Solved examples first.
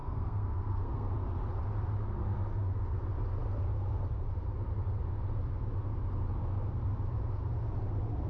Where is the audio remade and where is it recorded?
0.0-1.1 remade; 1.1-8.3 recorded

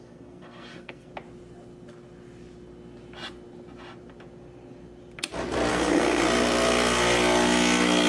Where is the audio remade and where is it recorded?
0.0-1.1 remade; 1.1-5.7 recorded; 5.7-6.2 remade; 6.2-8.1 recorded

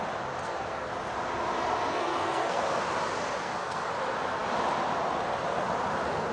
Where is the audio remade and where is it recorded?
0.0-0.4 recorded; 0.4-0.9 remade; 0.9-1.9 recorded; 1.9-2.6 remade; 2.6-3.4 recorded; 3.4-3.9 remade; 3.9-6.3 recorded

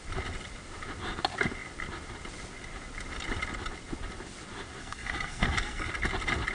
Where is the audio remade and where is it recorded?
0.0-4.8 recorded; 4.8-5.9 remade; 5.9-6.5 recorded

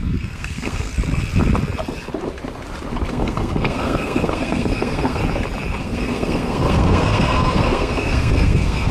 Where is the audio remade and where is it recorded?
0.0-0.9 remade; 0.9-3.1 recorded; 3.1-5.2 remade; 5.2-5.8 recorded; 5.8-8.9 remade